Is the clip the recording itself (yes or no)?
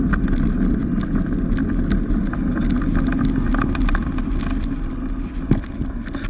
yes